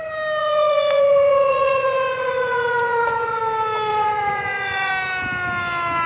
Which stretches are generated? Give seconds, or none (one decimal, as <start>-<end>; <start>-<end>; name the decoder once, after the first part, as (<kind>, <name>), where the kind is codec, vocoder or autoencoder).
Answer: 0.4-3.4 (vocoder, Vocos); 3.9-4.9